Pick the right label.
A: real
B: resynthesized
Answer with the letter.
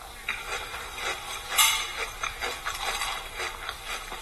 A